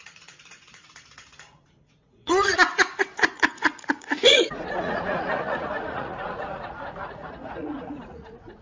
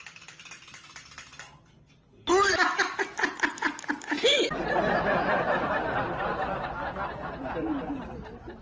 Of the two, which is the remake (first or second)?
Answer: first